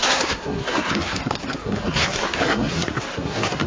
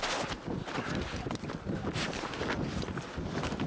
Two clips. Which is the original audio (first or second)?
second